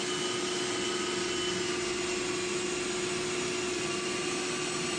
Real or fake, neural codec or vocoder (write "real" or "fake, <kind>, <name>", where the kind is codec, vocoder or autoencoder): real